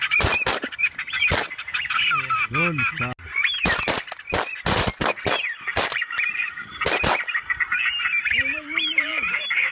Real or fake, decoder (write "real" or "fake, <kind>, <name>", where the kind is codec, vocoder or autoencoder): real